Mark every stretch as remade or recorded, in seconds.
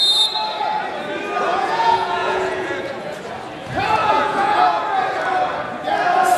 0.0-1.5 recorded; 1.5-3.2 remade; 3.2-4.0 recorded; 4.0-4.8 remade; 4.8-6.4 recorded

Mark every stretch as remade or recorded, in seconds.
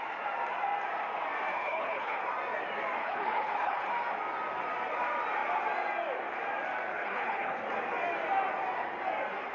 0.0-1.5 recorded; 1.5-2.2 remade; 2.2-3.0 recorded; 3.0-3.9 remade; 3.9-6.9 recorded; 6.9-7.6 remade; 7.6-9.5 recorded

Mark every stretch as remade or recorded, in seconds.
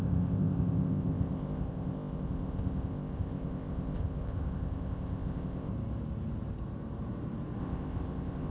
0.0-5.7 remade; 5.7-7.6 recorded; 7.6-8.5 remade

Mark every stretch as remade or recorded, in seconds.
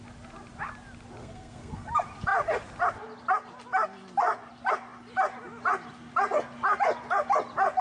0.0-1.2 recorded; 1.2-1.9 remade; 1.9-7.8 recorded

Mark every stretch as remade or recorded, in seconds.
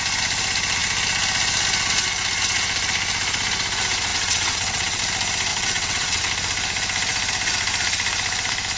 0.0-4.1 recorded; 4.1-5.0 remade; 5.0-5.5 recorded; 5.5-6.2 remade; 6.2-8.8 recorded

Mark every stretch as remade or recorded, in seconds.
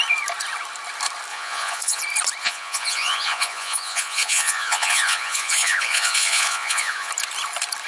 0.0-1.3 recorded; 1.3-2.0 remade; 2.0-2.4 recorded; 2.4-7.1 remade; 7.1-7.9 recorded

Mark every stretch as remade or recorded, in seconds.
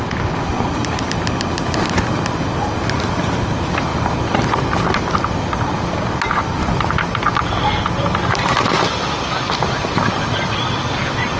0.0-11.4 recorded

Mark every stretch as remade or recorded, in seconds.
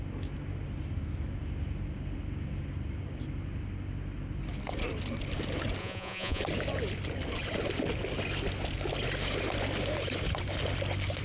0.0-5.8 recorded; 5.8-6.4 remade; 6.4-11.2 recorded